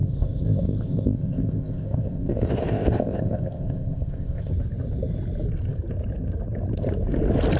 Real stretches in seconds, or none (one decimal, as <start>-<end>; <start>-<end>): 4.5-7.6